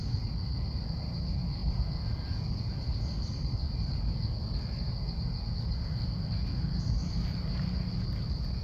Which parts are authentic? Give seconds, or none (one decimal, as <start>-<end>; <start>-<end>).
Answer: 0.0-8.6